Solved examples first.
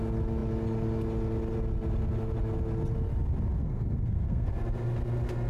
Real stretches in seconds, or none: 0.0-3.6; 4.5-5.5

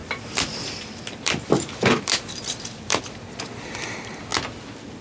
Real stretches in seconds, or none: 4.3-5.0